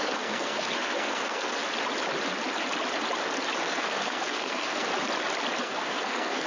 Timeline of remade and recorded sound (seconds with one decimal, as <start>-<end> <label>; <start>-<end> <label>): 0.0-1.6 remade; 1.6-3.6 recorded; 3.6-4.9 remade; 4.9-5.6 recorded; 5.6-6.5 remade